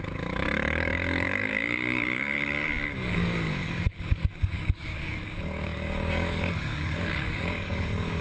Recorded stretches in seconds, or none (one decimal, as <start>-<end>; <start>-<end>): none